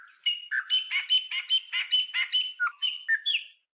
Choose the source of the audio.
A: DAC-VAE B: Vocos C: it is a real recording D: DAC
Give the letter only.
C